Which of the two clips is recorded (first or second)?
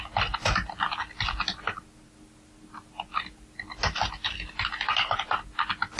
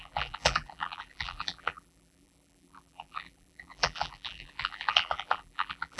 first